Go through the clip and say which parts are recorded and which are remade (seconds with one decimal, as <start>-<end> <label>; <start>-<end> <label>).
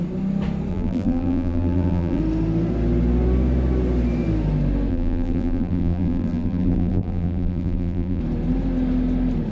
0.0-0.7 recorded; 0.7-2.2 remade; 2.2-4.9 recorded; 4.9-8.2 remade; 8.2-9.5 recorded